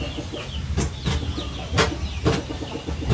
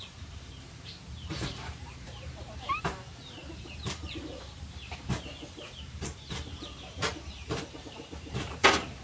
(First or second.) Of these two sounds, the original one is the first